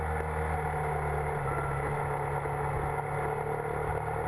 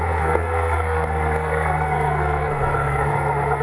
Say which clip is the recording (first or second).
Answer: first